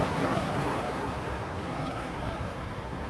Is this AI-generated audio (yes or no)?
yes